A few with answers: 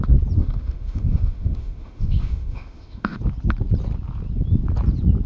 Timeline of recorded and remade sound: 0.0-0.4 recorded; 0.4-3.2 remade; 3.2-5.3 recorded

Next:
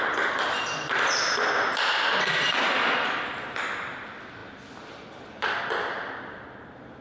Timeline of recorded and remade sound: 0.0-7.0 recorded